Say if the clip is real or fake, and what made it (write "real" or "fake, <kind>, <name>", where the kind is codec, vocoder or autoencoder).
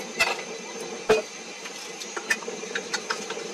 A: real